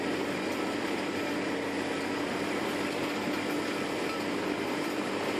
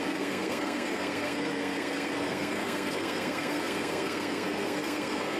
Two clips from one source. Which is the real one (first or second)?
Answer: first